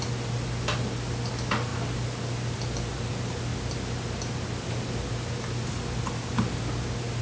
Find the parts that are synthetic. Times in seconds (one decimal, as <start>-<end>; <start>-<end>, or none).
none